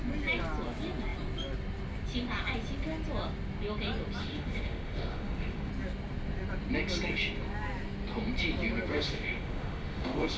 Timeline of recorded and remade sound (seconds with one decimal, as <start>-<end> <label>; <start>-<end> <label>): 0.0-4.2 recorded; 4.2-5.7 remade; 5.7-8.9 recorded; 8.9-10.4 remade